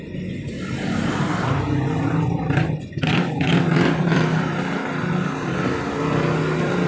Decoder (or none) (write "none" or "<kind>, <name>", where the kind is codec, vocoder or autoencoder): none